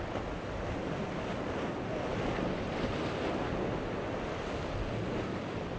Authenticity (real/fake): real